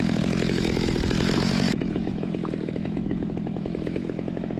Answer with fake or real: fake